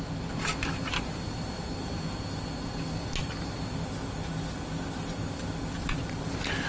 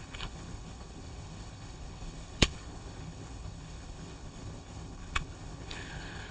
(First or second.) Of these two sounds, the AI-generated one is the second